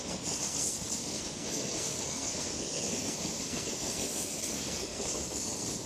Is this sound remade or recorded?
remade